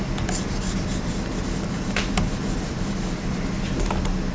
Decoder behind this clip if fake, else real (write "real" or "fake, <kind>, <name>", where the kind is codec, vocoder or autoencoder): real